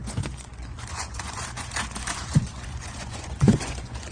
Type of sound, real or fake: fake